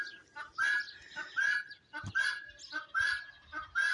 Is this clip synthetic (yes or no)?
no